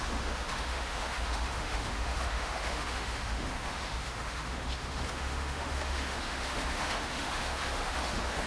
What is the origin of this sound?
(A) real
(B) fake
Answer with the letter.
B